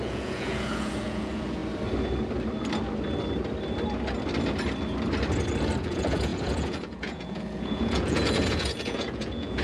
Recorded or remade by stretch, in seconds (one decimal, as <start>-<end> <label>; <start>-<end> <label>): 0.0-1.6 remade; 1.6-5.8 recorded; 5.8-9.6 remade